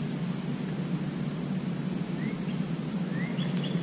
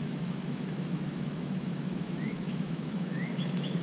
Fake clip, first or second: second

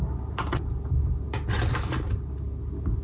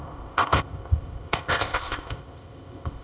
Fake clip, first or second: second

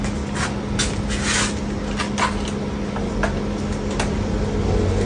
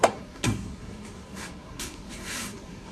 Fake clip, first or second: second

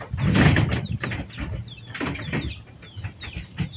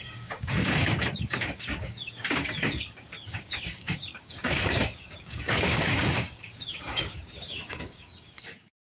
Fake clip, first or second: second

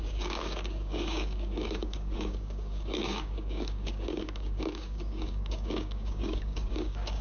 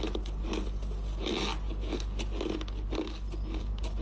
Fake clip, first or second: first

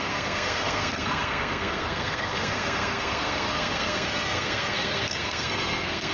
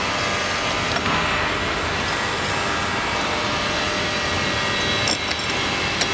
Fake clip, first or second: first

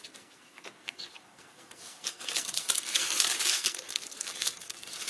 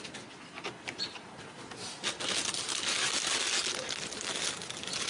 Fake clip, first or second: first